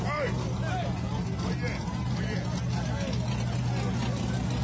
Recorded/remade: recorded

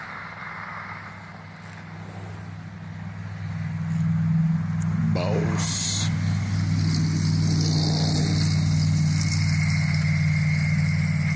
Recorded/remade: recorded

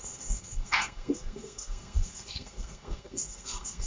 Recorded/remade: remade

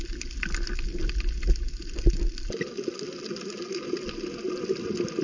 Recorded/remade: recorded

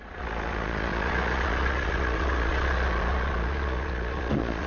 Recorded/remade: remade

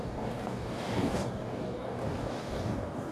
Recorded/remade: remade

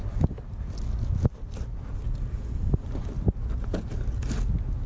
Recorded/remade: recorded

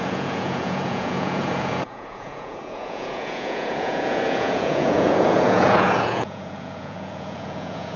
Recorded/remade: remade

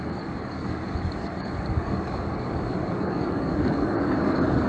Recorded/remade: remade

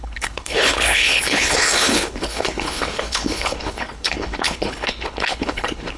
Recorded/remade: remade